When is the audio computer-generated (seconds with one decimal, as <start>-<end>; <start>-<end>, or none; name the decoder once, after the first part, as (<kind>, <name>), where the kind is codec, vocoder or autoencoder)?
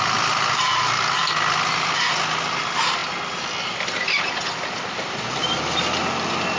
none